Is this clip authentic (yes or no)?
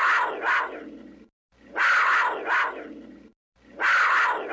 yes